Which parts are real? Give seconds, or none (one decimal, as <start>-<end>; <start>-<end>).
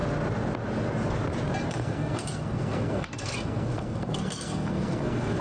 0.0-1.7